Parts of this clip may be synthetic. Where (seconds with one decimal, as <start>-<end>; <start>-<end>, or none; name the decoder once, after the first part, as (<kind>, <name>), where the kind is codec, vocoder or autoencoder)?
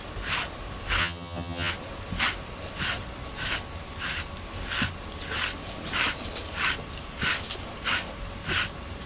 1.0-1.7 (vocoder, HiFi-GAN)